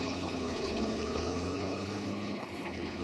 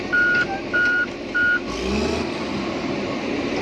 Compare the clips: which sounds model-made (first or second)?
first